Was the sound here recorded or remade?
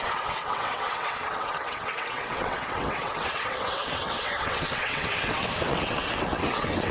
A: remade